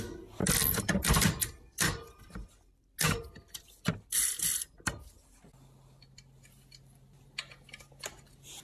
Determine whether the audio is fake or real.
real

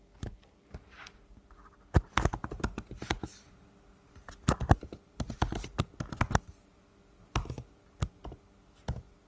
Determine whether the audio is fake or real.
real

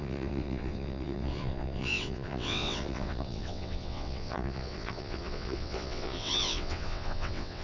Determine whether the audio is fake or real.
fake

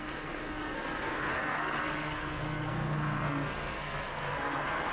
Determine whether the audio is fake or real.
fake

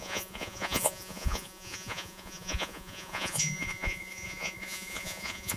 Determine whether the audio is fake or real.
fake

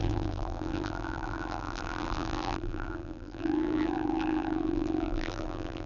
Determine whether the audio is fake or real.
fake